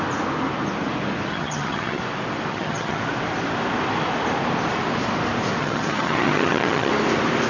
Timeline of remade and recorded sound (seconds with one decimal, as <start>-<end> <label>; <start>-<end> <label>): 0.0-1.3 recorded; 1.3-2.0 remade; 2.0-2.5 recorded; 2.5-3.0 remade; 3.0-5.6 recorded; 5.6-6.9 remade; 6.9-7.5 recorded